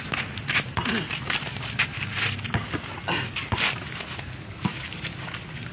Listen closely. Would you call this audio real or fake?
real